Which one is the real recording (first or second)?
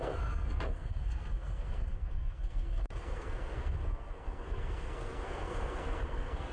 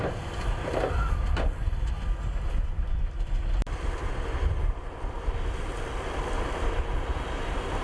second